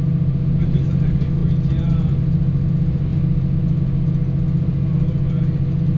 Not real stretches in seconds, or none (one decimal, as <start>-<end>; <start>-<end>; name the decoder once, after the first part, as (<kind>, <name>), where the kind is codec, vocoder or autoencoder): none